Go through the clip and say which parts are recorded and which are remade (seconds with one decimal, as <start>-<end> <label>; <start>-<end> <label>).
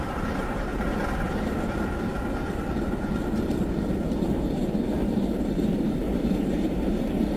0.0-0.7 remade; 0.7-5.0 recorded; 5.0-7.4 remade